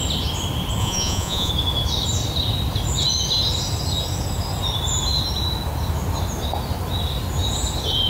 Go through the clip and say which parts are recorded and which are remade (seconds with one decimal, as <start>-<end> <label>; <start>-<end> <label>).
0.0-0.8 recorded; 0.8-1.5 remade; 1.5-8.1 recorded